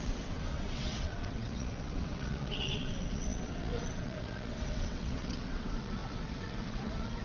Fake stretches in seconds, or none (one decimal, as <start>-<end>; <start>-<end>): 0.0-7.2